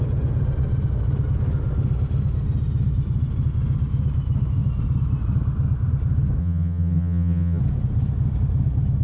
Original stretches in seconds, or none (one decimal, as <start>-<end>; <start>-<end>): 0.0-6.4; 7.6-9.0